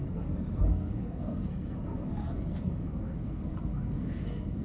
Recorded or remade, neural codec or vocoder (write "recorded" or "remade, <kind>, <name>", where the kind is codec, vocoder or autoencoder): remade, codec, SNAC